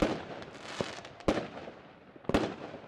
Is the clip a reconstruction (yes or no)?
no